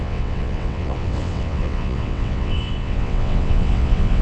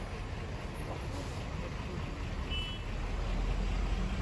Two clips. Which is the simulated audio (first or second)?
first